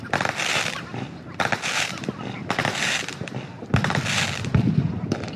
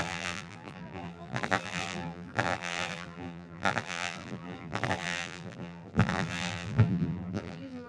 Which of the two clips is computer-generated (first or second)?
second